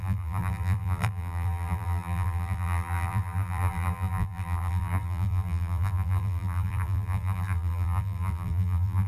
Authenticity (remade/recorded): remade